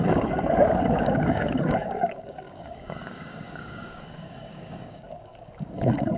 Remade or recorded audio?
remade